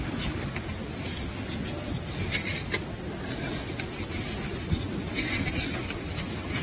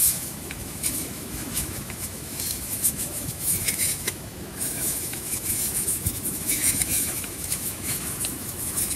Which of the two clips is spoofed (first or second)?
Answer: second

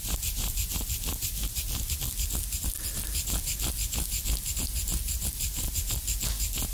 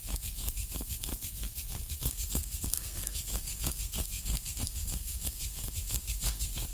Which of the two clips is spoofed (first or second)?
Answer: second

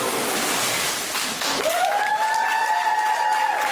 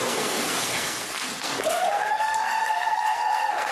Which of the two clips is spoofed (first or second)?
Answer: second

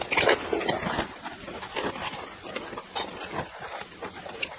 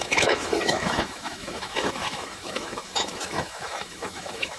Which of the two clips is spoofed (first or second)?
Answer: second